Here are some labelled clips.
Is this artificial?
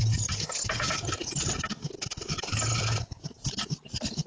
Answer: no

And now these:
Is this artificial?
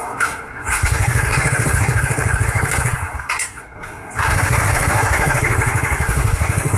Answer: yes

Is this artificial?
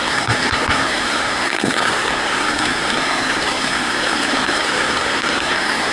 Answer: yes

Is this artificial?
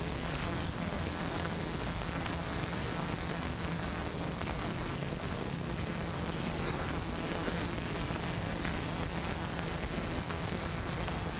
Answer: yes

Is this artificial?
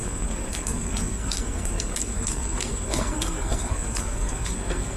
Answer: yes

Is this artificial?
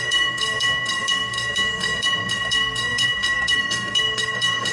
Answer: yes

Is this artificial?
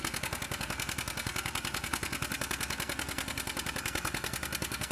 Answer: yes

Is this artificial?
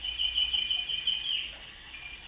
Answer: no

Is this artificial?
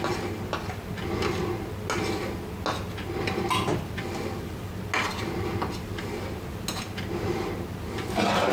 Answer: no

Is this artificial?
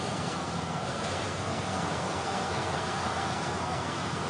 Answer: yes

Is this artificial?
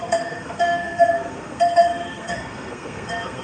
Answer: yes